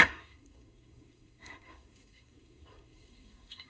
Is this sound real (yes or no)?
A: no